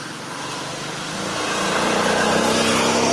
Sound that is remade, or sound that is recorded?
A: recorded